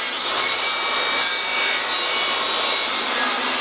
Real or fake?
real